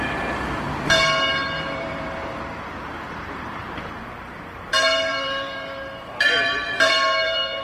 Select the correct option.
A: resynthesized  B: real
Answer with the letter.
A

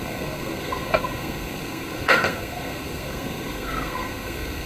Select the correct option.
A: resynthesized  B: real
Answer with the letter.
A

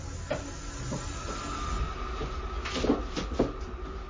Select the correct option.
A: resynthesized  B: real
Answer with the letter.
B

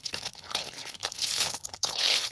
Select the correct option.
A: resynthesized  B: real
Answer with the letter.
A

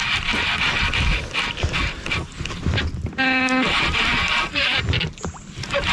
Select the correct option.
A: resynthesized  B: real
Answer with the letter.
B